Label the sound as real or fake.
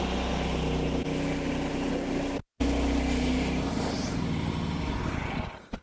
real